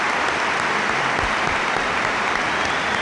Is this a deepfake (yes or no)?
no